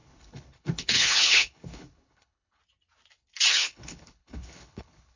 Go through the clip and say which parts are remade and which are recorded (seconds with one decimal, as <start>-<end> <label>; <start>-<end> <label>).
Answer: 0.0-2.6 remade; 2.6-3.5 recorded; 3.5-5.2 remade